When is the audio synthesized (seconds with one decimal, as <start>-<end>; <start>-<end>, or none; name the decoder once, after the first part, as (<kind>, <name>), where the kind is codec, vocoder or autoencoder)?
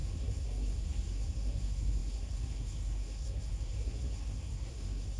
0.0-5.2 (codec, SNAC)